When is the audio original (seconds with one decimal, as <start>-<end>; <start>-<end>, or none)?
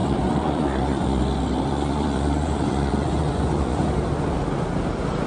1.2-1.7; 3.8-5.3